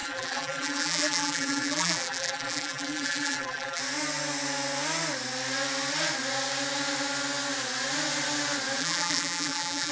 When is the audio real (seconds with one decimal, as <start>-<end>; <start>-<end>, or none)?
3.8-8.8